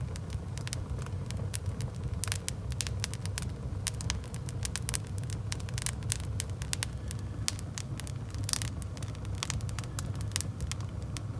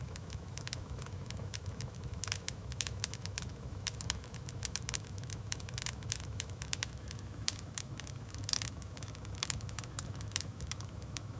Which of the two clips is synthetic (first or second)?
second